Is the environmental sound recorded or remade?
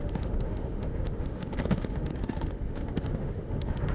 remade